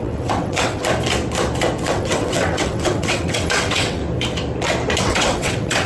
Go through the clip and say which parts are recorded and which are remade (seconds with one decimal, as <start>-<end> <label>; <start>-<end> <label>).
0.0-0.8 remade; 0.8-1.9 recorded; 1.9-4.0 remade; 4.0-5.0 recorded; 5.0-5.9 remade